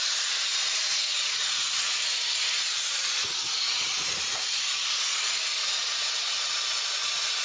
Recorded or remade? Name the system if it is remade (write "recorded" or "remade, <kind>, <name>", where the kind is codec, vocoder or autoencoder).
remade, vocoder, Vocos